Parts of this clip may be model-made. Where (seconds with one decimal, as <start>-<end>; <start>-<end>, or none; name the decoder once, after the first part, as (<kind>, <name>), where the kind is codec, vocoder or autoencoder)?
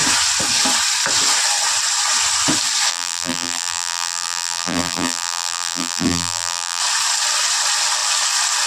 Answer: 2.9-6.8 (vocoder, BigVGAN v2)